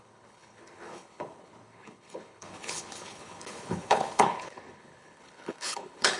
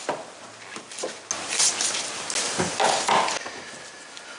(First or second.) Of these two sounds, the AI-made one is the first